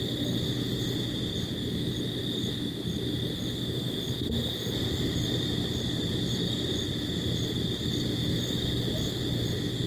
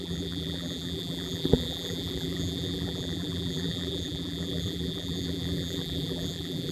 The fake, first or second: second